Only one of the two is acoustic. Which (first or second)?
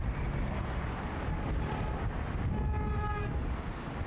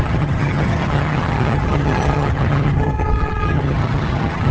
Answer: first